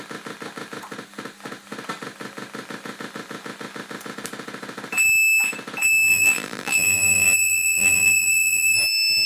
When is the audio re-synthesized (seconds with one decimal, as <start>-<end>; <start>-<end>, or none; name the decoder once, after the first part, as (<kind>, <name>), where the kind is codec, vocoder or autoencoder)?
6.1-8.8 (vocoder, BigVGAN v2)